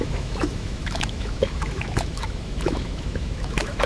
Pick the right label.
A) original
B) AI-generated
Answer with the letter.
B